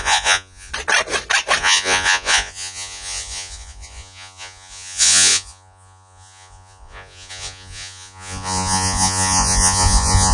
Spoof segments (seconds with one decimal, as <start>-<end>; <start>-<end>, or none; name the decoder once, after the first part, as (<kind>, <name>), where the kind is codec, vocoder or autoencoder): 0.0-0.7 (vocoder, Vocos); 1.6-10.3